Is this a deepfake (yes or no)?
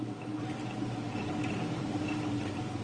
yes